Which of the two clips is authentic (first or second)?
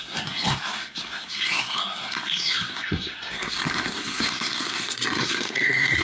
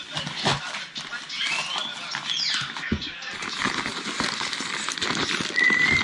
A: second